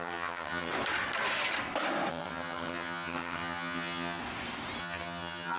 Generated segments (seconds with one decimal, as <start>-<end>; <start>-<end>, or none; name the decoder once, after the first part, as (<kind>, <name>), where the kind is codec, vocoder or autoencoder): 0.0-0.7 (vocoder, HiFi-GAN); 2.1-4.2; 4.8-5.6